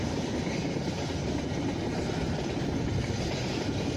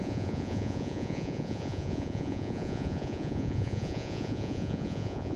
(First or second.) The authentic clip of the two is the first